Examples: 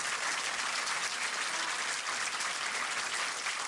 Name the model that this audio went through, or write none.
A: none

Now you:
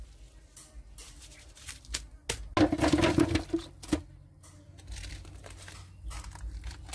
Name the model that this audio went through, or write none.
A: none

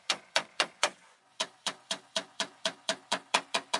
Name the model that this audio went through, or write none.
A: vocoder, Vocos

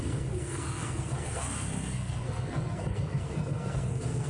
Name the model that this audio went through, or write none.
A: codec, SNAC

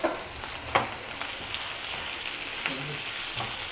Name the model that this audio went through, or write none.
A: none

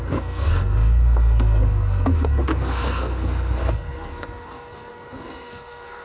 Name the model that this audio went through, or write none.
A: codec, SNAC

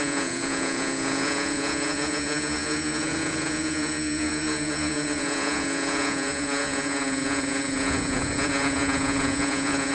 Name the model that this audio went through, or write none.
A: vocoder, Vocos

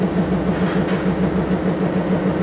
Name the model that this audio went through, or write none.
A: none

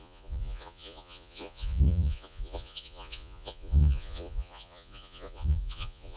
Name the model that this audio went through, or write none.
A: vocoder, Vocos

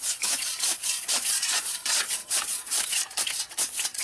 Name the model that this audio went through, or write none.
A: vocoder, Vocos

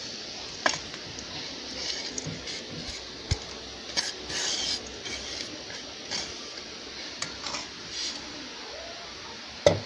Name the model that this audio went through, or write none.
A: none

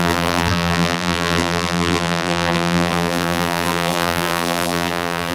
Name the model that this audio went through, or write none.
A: vocoder, BigVGAN v2